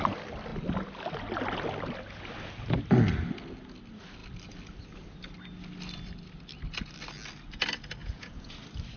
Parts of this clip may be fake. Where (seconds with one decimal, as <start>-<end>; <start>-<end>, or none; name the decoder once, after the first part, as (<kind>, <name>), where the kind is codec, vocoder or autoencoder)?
8.0-8.5 (vocoder, Vocos)